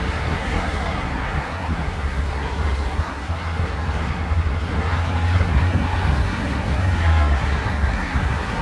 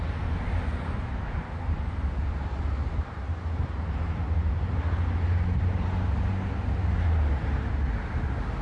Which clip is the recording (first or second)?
second